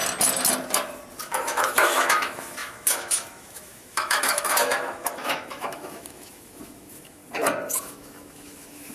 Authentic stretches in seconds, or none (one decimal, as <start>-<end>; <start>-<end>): 0.0-1.2; 7.2-7.7